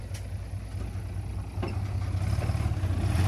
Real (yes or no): yes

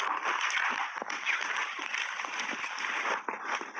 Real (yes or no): yes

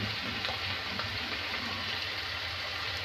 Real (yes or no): yes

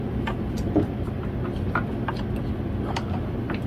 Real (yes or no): no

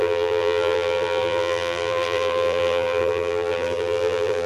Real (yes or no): no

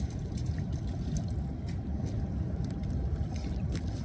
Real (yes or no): yes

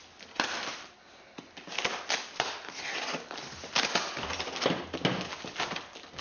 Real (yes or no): yes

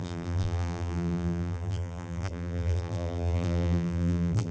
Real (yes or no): no